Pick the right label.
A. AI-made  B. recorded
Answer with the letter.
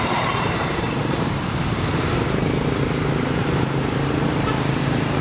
A